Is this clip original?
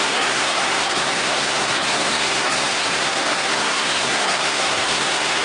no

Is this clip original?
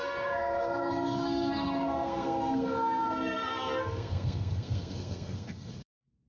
no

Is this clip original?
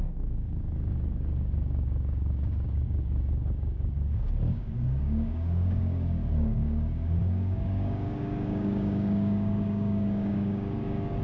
no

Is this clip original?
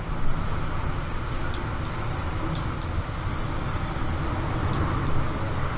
yes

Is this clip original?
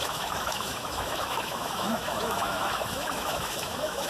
no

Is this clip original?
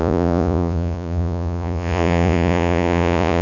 no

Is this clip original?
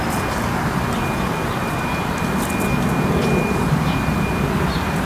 yes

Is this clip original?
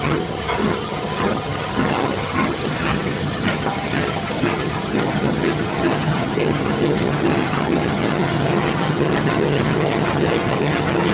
no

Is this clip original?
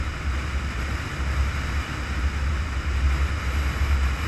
yes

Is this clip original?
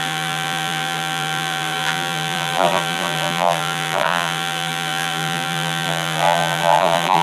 no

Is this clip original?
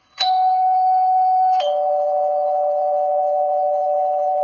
no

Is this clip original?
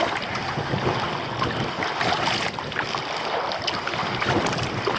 yes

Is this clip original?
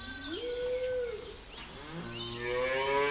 yes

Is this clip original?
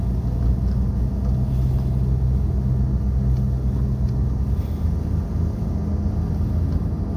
yes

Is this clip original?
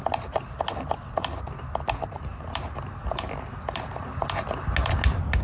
yes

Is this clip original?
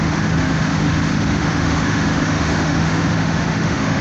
no